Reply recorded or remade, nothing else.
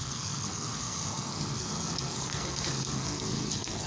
remade